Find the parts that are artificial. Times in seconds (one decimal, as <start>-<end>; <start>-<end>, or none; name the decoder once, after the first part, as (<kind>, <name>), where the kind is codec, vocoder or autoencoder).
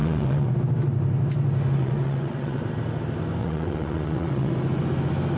0.0-0.5 (vocoder, WaveNeXt); 1.7-2.6; 3.4-4.5